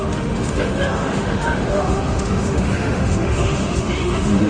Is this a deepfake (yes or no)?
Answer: yes